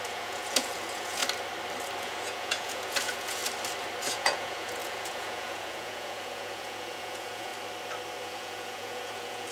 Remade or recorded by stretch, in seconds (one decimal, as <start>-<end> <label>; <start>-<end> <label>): 0.0-1.2 remade; 1.2-2.0 recorded; 2.0-3.4 remade; 3.4-4.1 recorded; 4.1-7.5 remade; 7.5-8.2 recorded; 8.2-9.5 remade